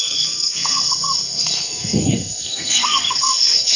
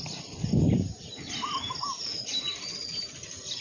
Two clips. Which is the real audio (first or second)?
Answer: second